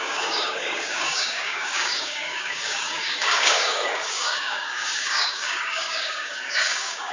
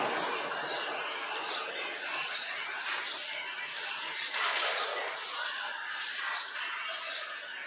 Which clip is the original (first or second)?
second